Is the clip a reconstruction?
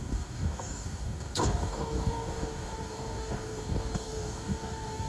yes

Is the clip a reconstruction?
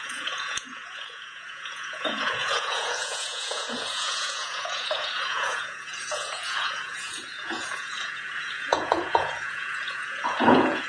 yes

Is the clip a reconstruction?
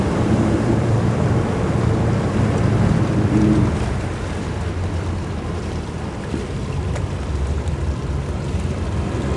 yes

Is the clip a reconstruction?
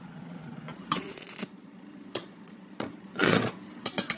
yes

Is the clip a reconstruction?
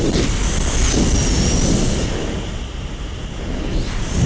no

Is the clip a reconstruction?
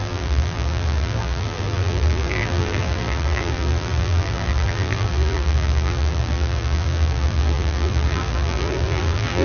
yes